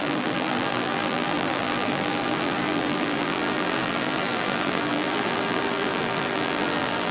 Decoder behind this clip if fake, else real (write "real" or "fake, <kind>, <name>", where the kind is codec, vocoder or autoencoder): fake, vocoder, BigVGAN v2